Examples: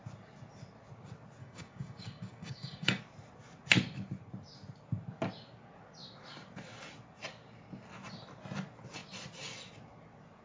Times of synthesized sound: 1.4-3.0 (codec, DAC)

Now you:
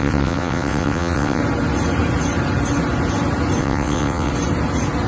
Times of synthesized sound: 0.0-1.4 (vocoder, WaveNeXt); 3.6-4.3

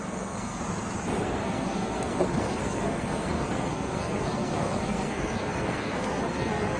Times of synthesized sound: 0.0-0.6 (codec, SNAC); 1.2-6.8